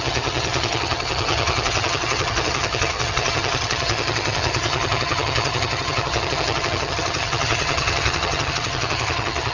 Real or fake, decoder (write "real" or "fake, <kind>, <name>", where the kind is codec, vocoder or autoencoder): fake, vocoder, HiFi-GAN